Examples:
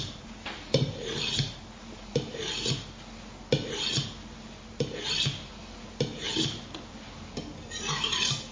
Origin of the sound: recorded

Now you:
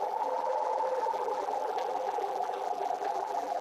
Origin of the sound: remade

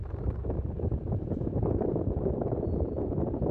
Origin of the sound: recorded